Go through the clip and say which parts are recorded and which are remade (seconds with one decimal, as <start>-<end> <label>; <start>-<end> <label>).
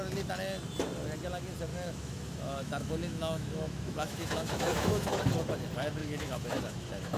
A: 0.0-1.7 recorded; 1.7-5.2 remade; 5.2-6.0 recorded; 6.0-7.2 remade